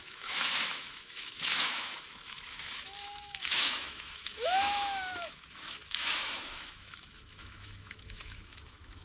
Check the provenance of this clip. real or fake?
fake